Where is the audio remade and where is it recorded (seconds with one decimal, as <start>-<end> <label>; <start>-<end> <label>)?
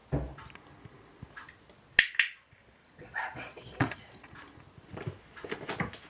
0.0-2.8 recorded; 2.8-4.3 remade; 4.3-6.1 recorded